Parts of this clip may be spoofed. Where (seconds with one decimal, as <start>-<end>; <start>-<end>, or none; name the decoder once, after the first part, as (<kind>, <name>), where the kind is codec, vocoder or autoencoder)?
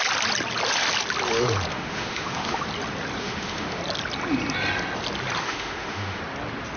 1.7-2.6 (autoencoder, DAC-VAE); 3.2-3.8; 5.4-6.2